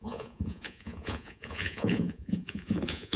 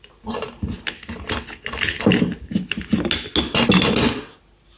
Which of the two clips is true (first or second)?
second